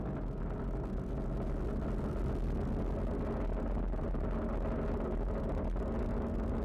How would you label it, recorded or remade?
recorded